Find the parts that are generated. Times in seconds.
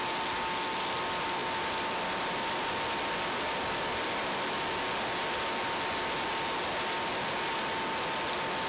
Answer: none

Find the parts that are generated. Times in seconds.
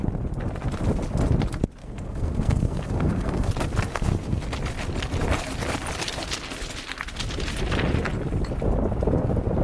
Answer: 1.8-3.5 (codec, SNAC); 3.9-4.4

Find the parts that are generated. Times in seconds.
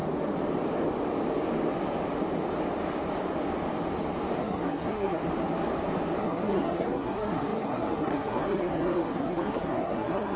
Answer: 4.4-5.2 (codec, SNAC); 6.2-10.4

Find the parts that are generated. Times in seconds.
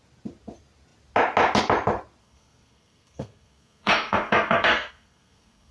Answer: 2.2-5.7 (codec, SNAC)